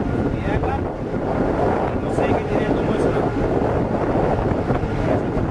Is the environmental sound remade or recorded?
recorded